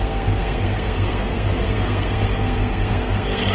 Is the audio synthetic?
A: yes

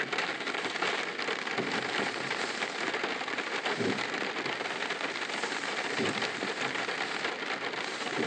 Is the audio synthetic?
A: no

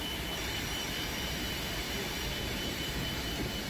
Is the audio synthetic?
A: yes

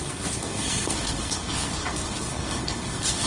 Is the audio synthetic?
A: yes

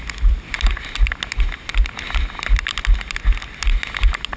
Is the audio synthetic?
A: no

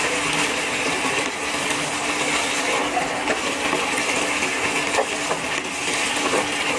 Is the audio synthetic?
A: no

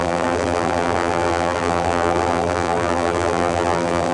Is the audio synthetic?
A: yes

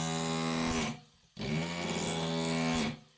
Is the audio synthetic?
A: no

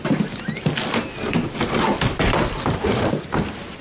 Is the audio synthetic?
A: no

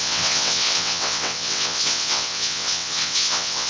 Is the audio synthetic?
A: yes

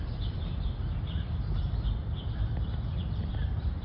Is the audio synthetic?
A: yes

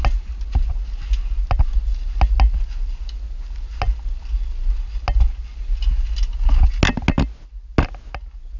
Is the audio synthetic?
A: no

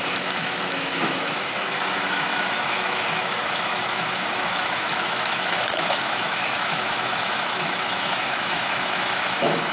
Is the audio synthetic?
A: yes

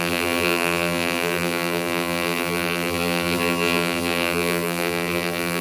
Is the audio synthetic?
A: yes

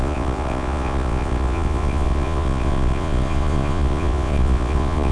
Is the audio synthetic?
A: yes